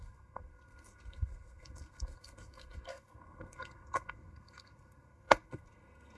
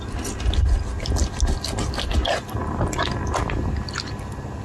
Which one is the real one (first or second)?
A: second